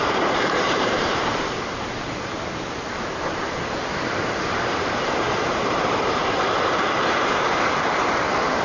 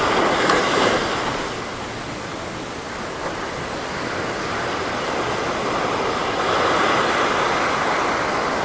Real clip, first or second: second